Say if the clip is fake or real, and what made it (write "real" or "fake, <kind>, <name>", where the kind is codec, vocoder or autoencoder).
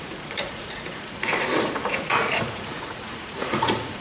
fake, vocoder, Vocos